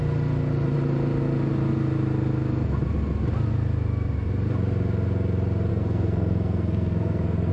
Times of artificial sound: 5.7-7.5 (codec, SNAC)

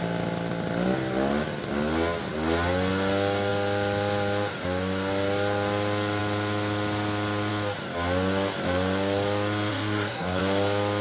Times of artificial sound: 9.7-10.4 (codec, SNAC)

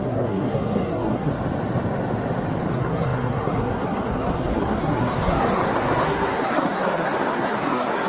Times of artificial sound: 0.0-1.3 (codec, SNAC); 2.7-8.1

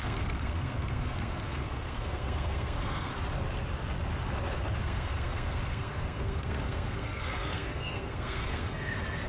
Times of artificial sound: 0.0-3.1 (codec, SNAC); 4.8-9.3

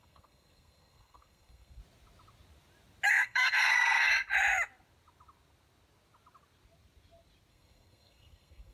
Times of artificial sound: 0.0-1.8 (codec, SNAC); 3.1-4.1; 7.5-8.7